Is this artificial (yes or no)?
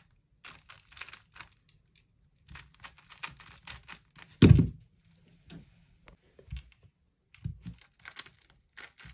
no